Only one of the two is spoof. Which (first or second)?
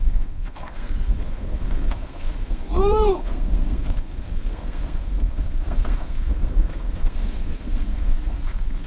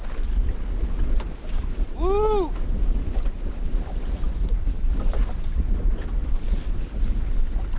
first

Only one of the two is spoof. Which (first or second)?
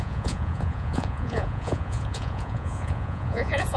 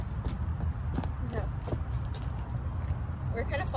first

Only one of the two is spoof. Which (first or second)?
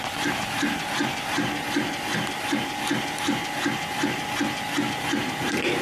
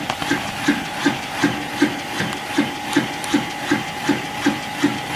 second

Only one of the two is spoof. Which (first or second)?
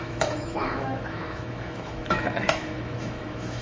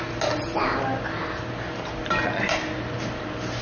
first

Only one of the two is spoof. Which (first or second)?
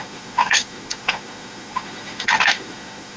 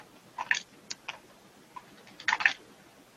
first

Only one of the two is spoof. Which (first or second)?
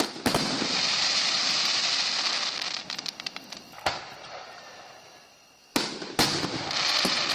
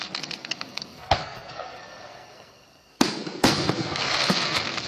second